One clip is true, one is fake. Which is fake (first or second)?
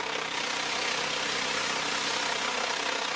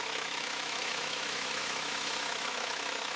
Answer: second